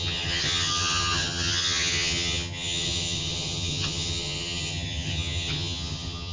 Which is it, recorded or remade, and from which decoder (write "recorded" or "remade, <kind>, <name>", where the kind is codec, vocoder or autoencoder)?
remade, vocoder, HiFi-GAN